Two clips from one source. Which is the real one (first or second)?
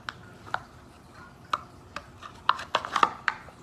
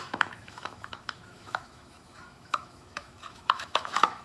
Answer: first